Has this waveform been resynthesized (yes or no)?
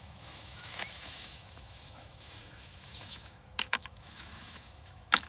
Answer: yes